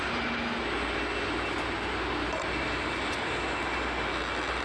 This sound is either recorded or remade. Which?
recorded